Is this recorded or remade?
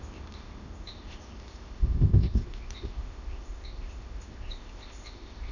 remade